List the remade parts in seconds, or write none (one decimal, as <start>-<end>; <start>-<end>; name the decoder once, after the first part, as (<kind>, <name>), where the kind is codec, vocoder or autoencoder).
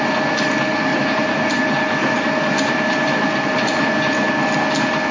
0.9-1.6 (vocoder, BigVGAN v2); 2.0-3.9